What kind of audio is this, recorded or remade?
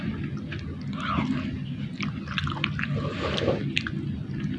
recorded